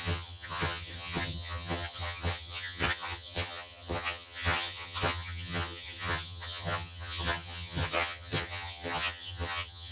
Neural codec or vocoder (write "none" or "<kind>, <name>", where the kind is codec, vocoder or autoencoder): vocoder, HiFi-GAN